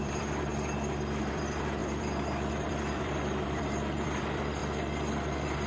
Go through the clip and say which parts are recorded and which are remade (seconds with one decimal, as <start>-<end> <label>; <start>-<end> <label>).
0.0-0.5 remade; 0.5-1.3 recorded; 1.3-4.6 remade; 4.6-5.7 recorded

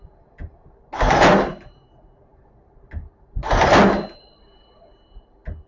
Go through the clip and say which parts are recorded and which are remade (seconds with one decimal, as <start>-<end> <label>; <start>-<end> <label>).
0.0-5.7 recorded

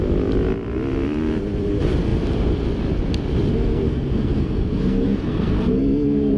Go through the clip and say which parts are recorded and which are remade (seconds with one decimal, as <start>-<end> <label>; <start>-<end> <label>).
0.0-3.5 recorded; 3.5-6.4 remade

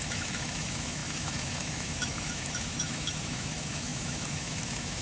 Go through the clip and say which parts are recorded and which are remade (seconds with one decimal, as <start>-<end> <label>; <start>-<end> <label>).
0.0-5.0 remade